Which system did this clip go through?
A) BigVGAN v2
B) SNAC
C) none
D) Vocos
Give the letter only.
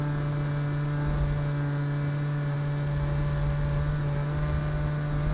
C